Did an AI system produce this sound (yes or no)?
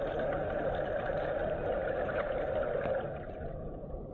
no